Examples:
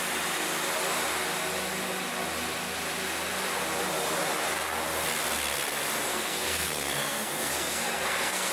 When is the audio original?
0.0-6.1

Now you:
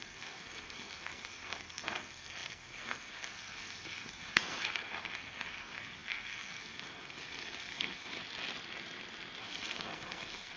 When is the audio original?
8.2-9.4

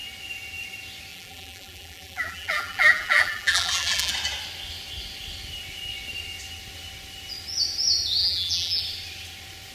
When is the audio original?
0.0-1.1; 4.1-8.2; 8.8-9.7